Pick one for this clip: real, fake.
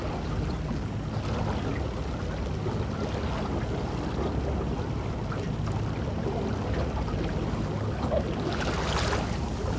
real